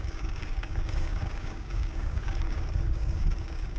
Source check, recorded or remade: remade